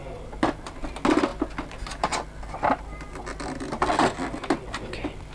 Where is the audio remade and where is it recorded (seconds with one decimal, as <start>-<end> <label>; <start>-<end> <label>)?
0.0-5.3 recorded